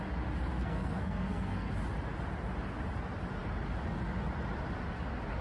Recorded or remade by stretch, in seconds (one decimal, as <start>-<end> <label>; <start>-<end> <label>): 0.0-0.6 recorded; 0.6-1.7 remade; 1.7-5.4 recorded

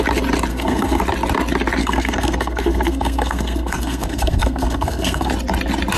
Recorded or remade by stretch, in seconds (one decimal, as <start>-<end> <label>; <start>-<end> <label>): 0.0-0.5 recorded; 0.5-1.0 remade; 1.0-1.8 recorded; 1.8-5.3 remade; 5.3-6.0 recorded

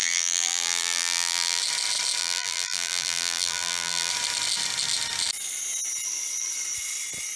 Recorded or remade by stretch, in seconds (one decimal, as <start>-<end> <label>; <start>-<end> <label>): 0.0-1.6 remade; 1.6-2.2 recorded; 2.2-4.1 remade; 4.1-7.4 recorded

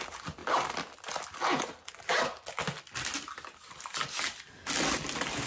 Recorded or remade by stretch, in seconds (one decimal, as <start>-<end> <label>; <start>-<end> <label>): 0.0-5.5 recorded

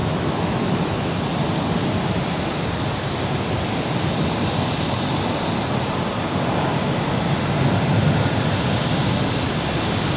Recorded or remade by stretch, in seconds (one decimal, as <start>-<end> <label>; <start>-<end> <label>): 0.0-1.1 remade; 1.1-10.2 recorded

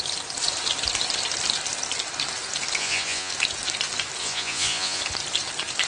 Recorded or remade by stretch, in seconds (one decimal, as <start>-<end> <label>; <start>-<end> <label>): 0.0-2.8 recorded; 2.8-3.3 remade; 3.3-4.2 recorded; 4.2-5.0 remade; 5.0-5.9 recorded

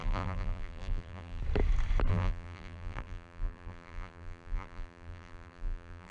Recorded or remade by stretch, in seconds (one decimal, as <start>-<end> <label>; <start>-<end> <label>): 0.0-1.4 remade; 1.4-2.1 recorded; 2.1-6.1 remade

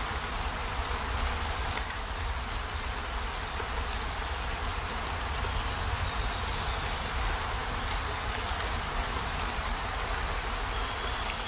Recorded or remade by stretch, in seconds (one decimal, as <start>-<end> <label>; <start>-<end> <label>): 0.0-11.5 recorded